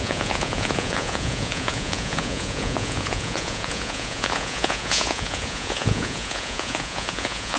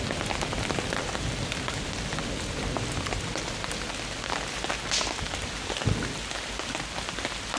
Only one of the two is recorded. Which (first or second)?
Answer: second